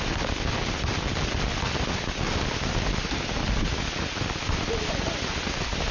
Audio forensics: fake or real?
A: real